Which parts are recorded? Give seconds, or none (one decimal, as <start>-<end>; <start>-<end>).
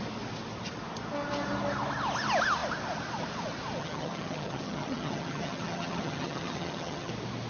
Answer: 0.0-3.8; 7.1-7.5